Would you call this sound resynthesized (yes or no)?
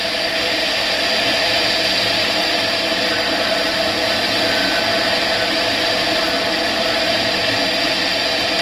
no